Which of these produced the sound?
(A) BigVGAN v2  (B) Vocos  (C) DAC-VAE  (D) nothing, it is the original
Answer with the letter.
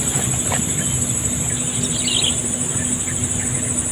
D